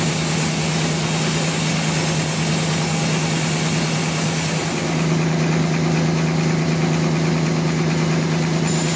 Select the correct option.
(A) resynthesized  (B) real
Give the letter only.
B